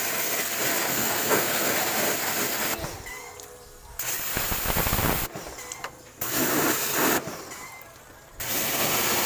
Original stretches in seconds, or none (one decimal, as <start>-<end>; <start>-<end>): 0.0-0.9; 1.7-9.3